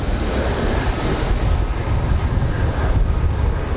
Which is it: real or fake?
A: real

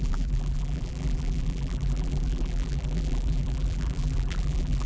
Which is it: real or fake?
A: fake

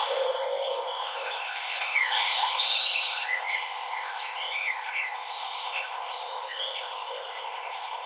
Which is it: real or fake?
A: fake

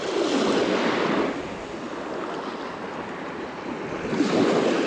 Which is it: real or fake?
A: real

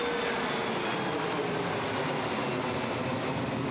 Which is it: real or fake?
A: real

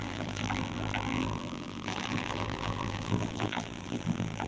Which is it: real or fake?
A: fake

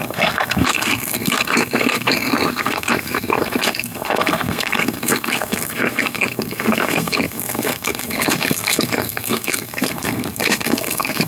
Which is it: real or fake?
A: fake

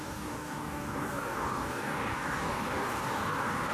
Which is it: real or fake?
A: fake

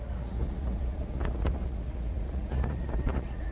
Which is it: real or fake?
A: fake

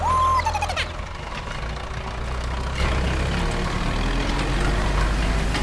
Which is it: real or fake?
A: real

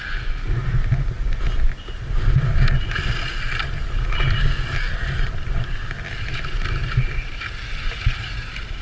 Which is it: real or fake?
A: real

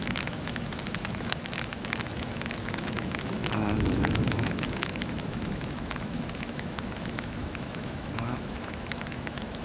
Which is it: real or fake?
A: fake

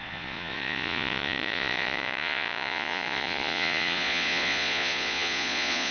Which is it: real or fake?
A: fake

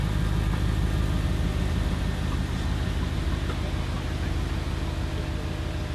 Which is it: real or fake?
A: real